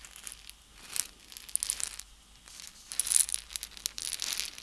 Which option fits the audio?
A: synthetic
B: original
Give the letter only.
B